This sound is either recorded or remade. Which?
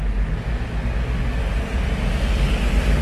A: recorded